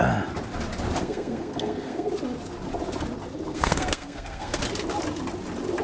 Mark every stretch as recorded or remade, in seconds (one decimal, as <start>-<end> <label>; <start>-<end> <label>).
0.0-1.0 recorded; 1.0-2.1 remade; 2.1-3.5 recorded; 3.5-4.6 remade; 4.6-5.8 recorded